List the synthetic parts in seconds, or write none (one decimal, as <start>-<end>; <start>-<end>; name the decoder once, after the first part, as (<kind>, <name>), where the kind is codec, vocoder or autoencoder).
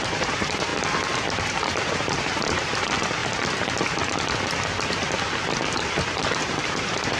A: 0.0-0.7 (vocoder, BigVGAN v2); 1.4-3.2; 5.7-7.2